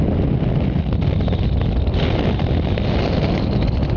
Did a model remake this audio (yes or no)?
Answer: no